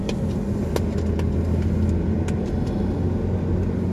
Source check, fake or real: real